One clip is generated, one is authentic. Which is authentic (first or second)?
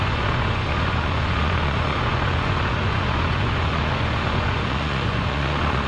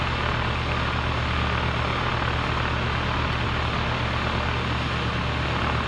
second